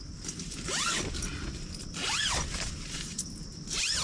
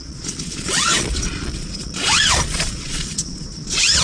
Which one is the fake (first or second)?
second